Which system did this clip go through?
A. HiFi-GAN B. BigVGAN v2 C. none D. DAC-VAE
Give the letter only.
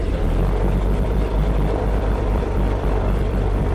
B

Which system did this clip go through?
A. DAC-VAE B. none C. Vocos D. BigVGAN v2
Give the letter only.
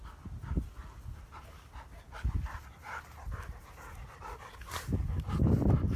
B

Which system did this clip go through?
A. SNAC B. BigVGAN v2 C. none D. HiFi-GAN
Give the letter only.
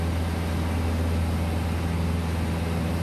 C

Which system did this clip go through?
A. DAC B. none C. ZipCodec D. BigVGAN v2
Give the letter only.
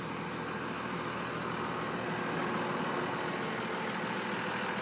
B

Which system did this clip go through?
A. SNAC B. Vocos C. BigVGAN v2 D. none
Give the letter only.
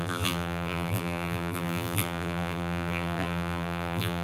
C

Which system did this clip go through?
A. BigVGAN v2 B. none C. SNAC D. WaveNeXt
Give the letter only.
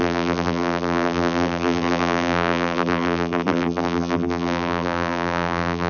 A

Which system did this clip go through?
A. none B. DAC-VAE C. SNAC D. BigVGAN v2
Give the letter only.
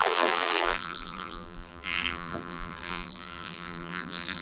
D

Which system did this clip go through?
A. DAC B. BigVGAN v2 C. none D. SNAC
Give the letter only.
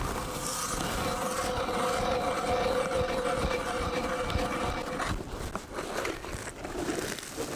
C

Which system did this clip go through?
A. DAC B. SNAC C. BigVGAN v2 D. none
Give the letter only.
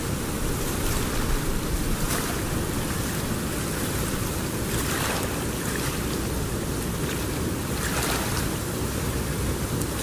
D